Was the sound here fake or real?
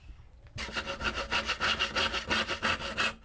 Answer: real